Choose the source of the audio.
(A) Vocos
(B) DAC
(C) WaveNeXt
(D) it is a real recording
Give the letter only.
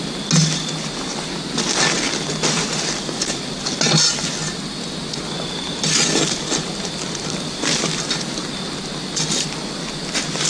D